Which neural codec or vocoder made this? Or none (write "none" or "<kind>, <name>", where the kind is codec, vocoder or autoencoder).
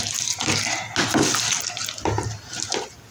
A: none